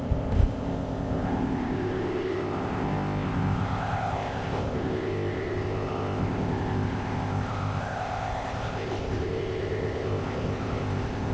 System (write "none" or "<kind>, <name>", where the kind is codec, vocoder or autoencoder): codec, ZipCodec